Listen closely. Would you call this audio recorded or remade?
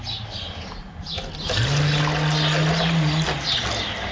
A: recorded